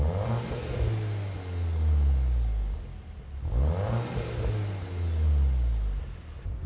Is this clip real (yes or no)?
yes